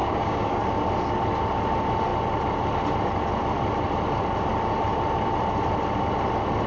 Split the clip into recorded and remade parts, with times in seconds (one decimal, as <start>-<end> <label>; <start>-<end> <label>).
0.0-0.6 remade; 0.6-6.7 recorded